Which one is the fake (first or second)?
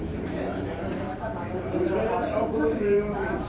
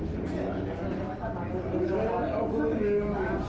first